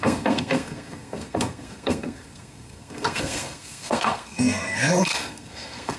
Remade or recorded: remade